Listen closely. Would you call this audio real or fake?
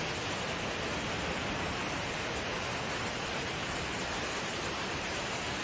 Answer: fake